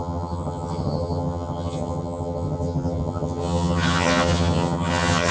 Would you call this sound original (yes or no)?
no